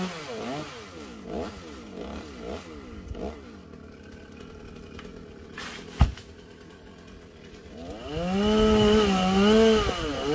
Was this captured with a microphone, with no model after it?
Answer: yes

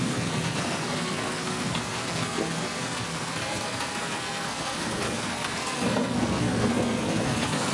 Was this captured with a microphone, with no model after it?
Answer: no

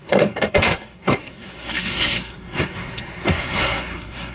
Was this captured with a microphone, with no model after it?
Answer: no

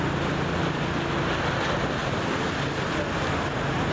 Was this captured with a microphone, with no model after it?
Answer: yes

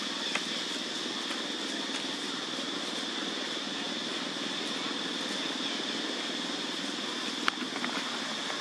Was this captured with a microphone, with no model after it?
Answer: yes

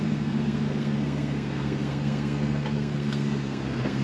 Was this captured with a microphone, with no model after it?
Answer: no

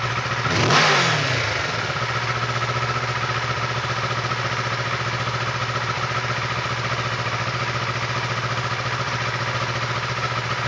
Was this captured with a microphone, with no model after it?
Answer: yes